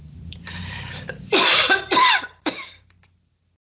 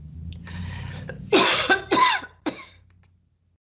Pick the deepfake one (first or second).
first